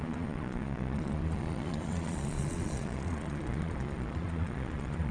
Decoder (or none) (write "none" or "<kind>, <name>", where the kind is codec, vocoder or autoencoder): vocoder, Vocos